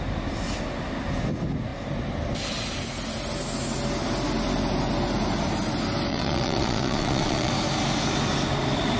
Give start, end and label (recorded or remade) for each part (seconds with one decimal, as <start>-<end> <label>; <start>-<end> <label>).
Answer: 0.0-6.1 recorded; 6.1-7.5 remade; 7.5-9.0 recorded